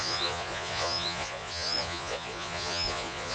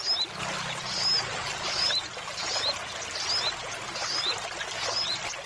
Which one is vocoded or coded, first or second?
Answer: first